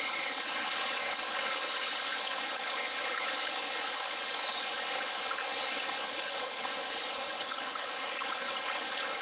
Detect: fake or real fake